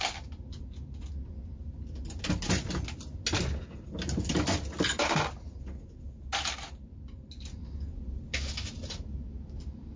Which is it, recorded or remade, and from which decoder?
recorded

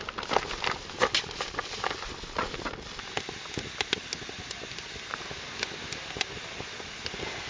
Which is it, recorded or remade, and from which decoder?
recorded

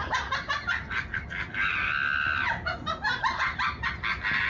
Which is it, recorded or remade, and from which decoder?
recorded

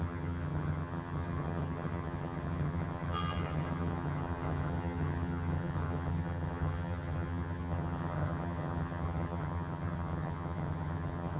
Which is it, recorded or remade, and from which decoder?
remade, vocoder, HiFi-GAN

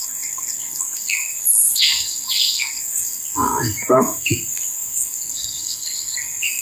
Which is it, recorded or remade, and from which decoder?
remade, codec, SNAC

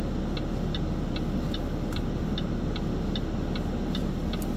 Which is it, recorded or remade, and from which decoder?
recorded